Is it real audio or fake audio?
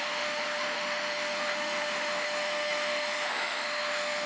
fake